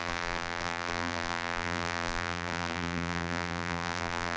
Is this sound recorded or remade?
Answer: remade